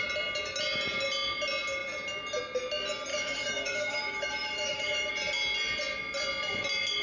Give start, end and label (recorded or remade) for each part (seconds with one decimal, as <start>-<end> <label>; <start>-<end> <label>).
0.0-3.1 recorded; 3.1-5.1 remade; 5.1-7.0 recorded